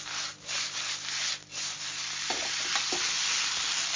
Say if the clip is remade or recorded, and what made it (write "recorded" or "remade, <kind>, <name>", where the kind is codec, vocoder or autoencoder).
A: recorded